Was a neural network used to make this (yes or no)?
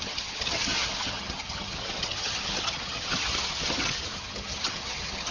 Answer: yes